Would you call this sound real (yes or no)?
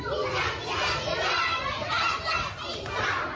yes